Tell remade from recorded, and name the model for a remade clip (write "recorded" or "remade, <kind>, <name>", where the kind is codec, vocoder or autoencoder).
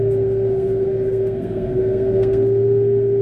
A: remade, codec, SNAC